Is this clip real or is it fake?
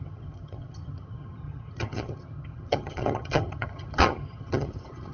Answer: fake